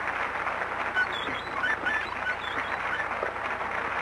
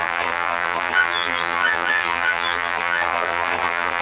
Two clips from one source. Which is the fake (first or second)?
second